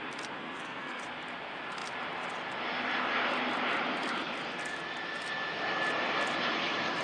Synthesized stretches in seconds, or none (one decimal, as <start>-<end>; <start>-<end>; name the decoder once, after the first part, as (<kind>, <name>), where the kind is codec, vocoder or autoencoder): 0.4-1.0 (codec, SNAC)

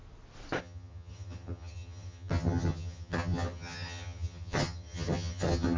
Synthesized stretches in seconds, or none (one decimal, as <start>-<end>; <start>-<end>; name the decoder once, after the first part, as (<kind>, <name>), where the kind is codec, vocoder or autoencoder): 0.6-5.8 (vocoder, HiFi-GAN)

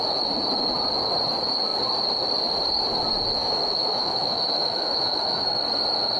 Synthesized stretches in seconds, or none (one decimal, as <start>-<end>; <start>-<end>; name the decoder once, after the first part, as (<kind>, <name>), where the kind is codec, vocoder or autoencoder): 3.4-5.6 (autoencoder, DAC-VAE)

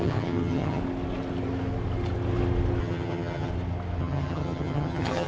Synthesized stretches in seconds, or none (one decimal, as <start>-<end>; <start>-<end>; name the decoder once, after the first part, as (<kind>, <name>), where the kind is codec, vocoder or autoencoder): 0.0-0.8 (vocoder, HiFi-GAN); 2.8-3.5; 4.0-5.3

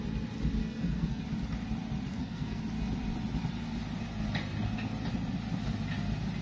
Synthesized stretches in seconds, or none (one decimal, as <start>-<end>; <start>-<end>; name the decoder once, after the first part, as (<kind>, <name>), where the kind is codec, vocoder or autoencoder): 0.6-1.2 (codec, SNAC); 2.1-2.6

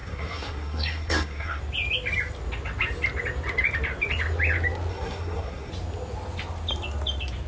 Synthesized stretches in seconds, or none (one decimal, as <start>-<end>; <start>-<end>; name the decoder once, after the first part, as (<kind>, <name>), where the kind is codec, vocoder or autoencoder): 0.0-1.6 (codec, SNAC); 4.9-5.7